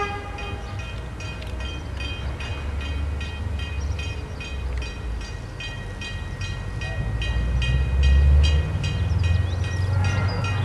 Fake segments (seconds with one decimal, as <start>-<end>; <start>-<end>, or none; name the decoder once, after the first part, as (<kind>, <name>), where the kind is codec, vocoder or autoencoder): none